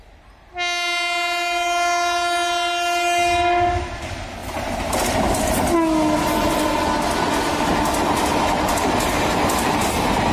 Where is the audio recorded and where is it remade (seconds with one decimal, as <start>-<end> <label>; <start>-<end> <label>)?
0.0-10.3 recorded